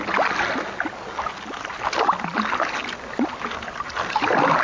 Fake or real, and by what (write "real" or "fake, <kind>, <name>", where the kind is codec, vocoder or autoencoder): real